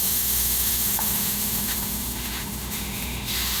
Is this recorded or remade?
remade